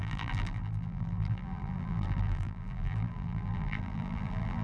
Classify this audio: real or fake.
fake